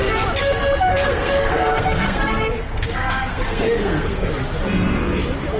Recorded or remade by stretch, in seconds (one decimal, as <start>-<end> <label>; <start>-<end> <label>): 0.0-0.9 recorded; 0.9-4.3 remade; 4.3-5.6 recorded